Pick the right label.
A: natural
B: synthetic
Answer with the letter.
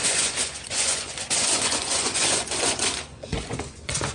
B